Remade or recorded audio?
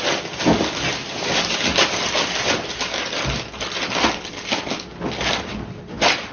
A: recorded